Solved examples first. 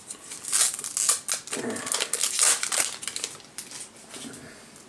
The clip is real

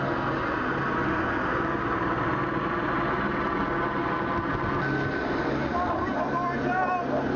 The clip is real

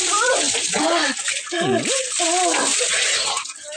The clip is real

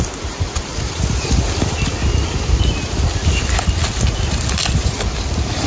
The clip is real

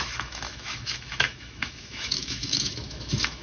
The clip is fake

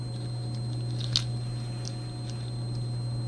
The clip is real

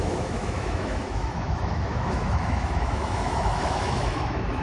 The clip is fake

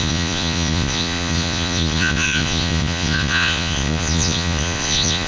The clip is fake